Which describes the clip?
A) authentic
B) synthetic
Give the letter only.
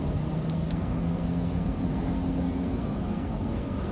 B